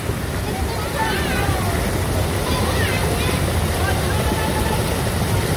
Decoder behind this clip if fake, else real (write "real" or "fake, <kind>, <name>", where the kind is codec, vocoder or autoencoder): real